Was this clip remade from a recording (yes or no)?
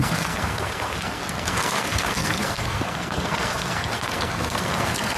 yes